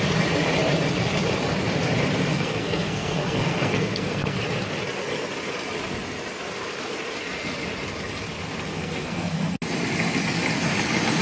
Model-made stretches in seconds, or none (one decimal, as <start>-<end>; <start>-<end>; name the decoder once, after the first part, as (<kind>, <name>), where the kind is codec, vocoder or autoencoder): 2.3-4.4 (codec, SNAC); 8.7-9.6